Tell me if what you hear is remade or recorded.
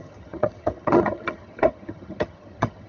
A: remade